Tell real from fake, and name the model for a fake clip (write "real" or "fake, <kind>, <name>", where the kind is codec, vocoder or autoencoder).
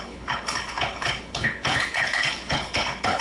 fake, codec, HILCodec